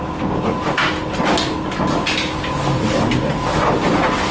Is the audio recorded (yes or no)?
yes